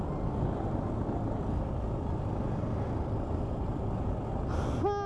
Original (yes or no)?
yes